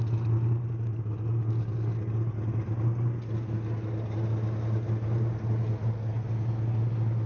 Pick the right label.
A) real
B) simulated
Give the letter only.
A